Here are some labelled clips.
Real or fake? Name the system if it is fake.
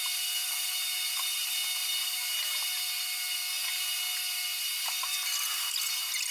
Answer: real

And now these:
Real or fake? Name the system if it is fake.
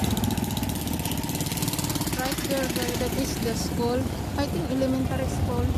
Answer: real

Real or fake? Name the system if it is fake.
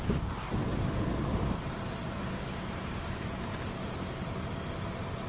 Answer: fake, vocoder, BigVGAN v2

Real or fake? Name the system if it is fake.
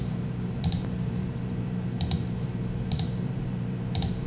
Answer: fake, vocoder, BigVGAN v2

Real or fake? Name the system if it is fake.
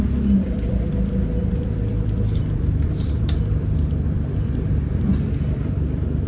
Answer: fake, vocoder, BigVGAN v2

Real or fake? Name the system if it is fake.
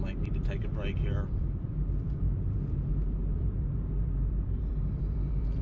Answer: fake, vocoder, BigVGAN v2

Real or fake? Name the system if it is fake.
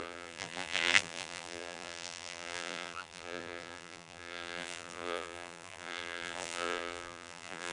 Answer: fake, vocoder, BigVGAN v2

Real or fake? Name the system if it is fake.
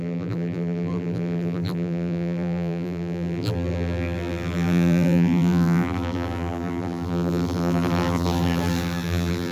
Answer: fake, vocoder, BigVGAN v2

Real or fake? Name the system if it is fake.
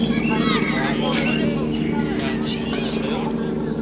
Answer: real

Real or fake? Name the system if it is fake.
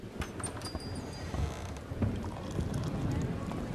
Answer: real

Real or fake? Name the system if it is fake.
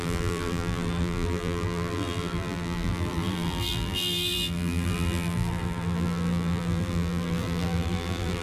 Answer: fake, vocoder, BigVGAN v2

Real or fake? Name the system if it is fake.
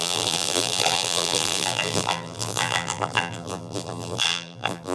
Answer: fake, vocoder, BigVGAN v2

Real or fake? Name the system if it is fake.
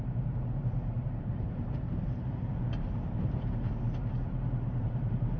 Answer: fake, vocoder, BigVGAN v2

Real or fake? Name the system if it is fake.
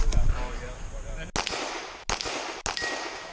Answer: real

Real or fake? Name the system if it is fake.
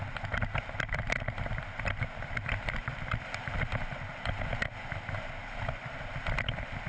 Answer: real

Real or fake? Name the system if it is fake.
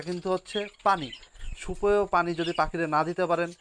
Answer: real